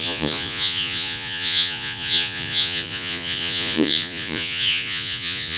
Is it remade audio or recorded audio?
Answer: remade